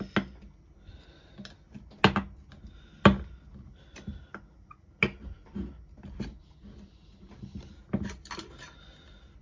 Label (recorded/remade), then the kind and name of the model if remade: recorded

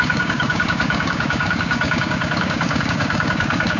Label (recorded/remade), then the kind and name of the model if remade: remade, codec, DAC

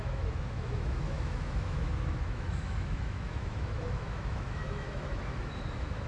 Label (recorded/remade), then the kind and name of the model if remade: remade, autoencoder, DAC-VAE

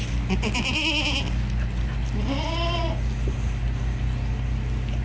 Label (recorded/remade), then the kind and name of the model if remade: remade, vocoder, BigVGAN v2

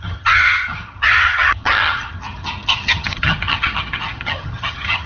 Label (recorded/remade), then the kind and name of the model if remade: remade, vocoder, HiFi-GAN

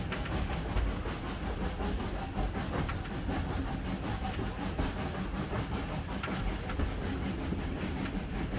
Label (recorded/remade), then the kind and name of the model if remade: recorded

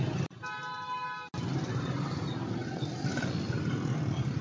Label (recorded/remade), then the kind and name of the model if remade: recorded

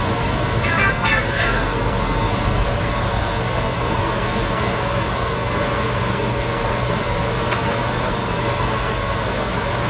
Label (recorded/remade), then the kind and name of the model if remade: remade, codec, SNAC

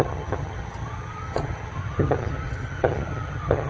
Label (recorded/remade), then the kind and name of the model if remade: remade, vocoder, HiFi-GAN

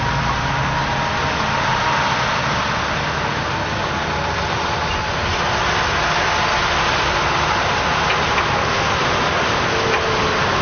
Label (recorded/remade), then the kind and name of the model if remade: recorded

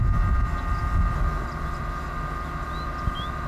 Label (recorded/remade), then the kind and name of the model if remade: recorded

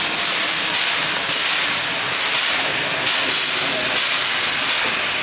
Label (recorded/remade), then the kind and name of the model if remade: recorded